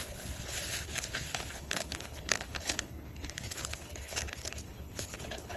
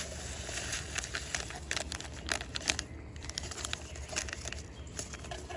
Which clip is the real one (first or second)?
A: second